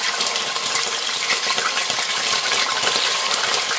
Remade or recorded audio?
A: remade